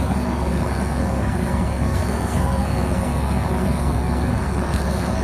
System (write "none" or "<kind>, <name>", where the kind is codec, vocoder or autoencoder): codec, SNAC